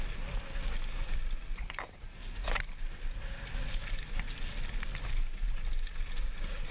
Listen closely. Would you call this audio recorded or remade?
recorded